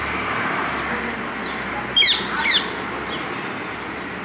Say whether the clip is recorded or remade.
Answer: recorded